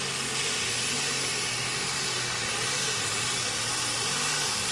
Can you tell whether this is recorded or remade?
recorded